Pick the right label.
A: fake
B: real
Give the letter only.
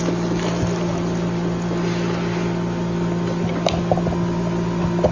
B